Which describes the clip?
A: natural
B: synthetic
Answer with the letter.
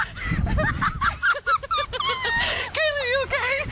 A